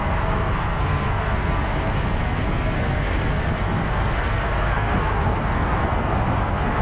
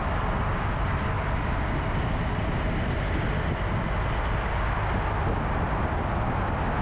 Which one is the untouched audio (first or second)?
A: second